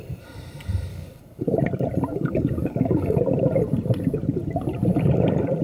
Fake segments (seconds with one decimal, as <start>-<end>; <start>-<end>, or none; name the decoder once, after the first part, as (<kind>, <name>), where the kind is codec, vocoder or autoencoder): 0.9-1.6 (codec, DAC); 2.1-3.2